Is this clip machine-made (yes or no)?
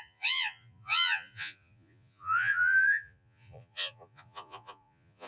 yes